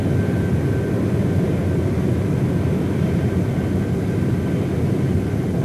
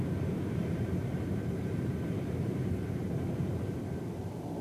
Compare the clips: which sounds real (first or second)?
first